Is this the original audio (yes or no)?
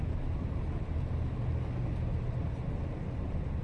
yes